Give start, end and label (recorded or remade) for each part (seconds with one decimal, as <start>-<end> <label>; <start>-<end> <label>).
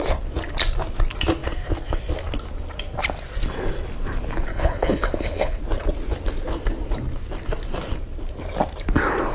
0.0-4.5 recorded; 4.5-5.6 remade; 5.6-9.3 recorded